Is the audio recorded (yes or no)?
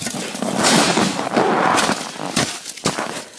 yes